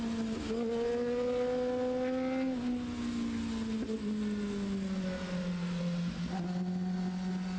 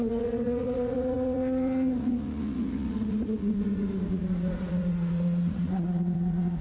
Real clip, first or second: first